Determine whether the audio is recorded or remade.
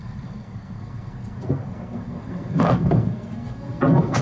remade